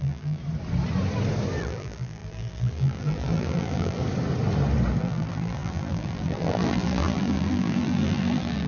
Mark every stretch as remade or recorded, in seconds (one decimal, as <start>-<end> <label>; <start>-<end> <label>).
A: 0.0-0.4 remade; 0.4-1.6 recorded; 1.6-4.0 remade; 4.0-5.0 recorded; 5.0-8.7 remade